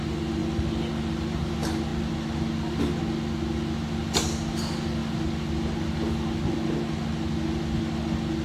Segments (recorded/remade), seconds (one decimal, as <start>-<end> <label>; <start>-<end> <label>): 0.0-8.4 recorded